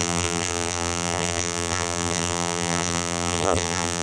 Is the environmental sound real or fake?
fake